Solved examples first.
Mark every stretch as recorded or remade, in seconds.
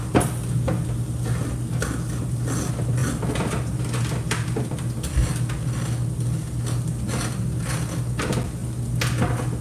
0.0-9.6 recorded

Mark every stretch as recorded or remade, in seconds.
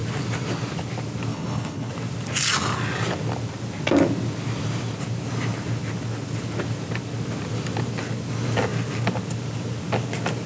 0.0-1.3 recorded; 1.3-1.9 remade; 1.9-10.5 recorded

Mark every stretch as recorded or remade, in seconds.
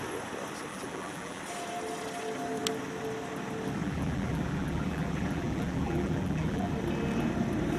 0.0-0.7 recorded; 0.7-1.4 remade; 1.4-3.8 recorded; 3.8-6.7 remade; 6.7-7.8 recorded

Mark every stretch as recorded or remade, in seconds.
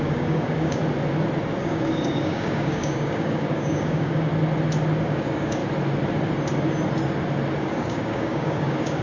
0.0-0.8 remade; 0.8-1.6 recorded; 1.6-4.3 remade; 4.3-5.0 recorded; 5.0-5.6 remade; 5.6-7.6 recorded; 7.6-9.0 remade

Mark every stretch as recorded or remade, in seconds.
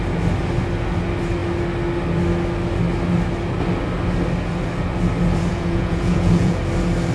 0.0-5.5 recorded; 5.5-6.6 remade; 6.6-7.1 recorded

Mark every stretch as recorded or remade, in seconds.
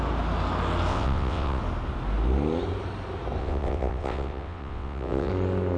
0.0-0.9 recorded; 0.9-1.6 remade; 1.6-3.4 recorded; 3.4-5.3 remade; 5.3-5.8 recorded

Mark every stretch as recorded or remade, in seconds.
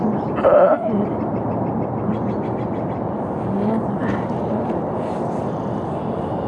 0.0-6.5 recorded